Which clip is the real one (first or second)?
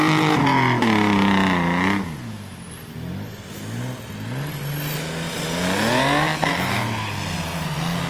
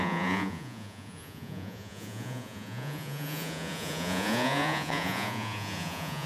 first